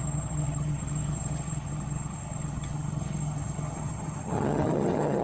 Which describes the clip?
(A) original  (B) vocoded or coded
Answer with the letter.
B